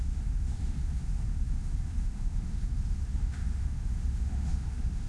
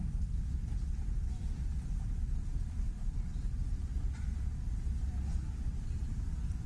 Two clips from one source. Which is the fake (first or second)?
first